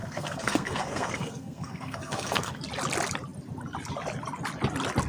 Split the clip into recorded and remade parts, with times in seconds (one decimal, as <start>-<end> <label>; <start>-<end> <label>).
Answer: 0.0-2.6 remade; 2.6-5.1 recorded